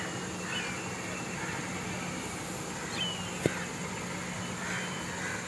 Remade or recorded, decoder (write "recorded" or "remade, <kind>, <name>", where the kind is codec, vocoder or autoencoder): recorded